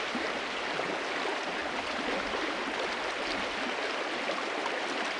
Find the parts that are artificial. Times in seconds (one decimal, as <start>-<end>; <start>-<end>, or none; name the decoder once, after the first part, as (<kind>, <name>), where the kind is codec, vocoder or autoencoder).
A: none